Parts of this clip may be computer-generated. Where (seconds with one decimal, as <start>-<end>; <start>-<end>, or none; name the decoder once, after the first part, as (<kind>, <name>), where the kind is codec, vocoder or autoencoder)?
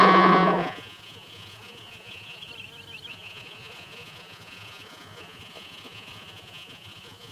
0.0-2.5 (vocoder, Vocos); 3.1-7.3